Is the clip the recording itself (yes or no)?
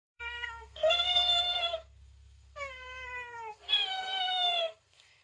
no